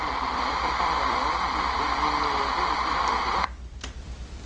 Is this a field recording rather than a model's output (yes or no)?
no